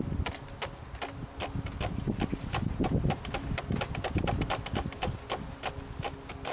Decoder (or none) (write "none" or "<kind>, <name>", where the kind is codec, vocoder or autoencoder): none